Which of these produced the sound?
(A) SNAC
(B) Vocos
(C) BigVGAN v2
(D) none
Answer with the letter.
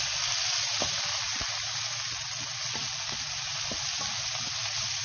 D